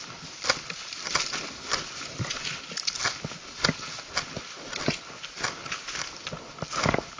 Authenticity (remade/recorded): recorded